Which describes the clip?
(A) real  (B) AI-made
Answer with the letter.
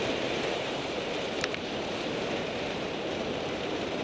B